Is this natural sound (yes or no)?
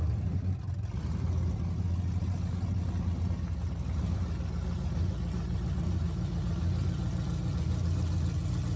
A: yes